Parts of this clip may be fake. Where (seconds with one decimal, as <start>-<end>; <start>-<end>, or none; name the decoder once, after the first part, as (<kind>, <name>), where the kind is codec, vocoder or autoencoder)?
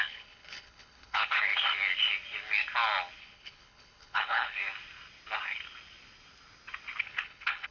0.0-1.5 (codec, HILCodec); 3.2-4.6; 7.0-7.7